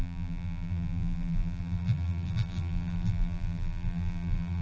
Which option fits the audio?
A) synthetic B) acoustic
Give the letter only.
A